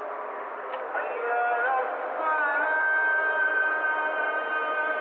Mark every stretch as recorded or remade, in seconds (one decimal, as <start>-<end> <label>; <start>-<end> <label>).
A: 0.0-5.0 recorded